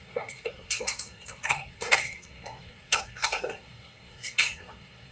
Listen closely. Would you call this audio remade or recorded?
remade